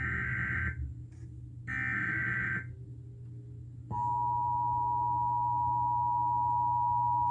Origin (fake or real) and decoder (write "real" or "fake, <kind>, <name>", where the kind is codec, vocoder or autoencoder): real